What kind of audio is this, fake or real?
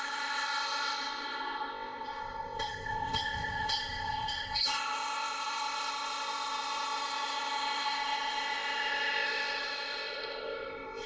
fake